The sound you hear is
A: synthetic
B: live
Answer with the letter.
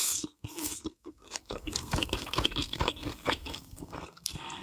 A